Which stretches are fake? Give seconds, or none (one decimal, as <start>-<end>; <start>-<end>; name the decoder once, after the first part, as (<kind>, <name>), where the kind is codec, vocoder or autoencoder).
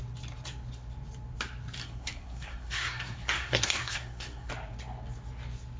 1.8-4.5 (codec, SNAC)